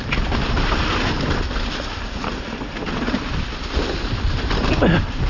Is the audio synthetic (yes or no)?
no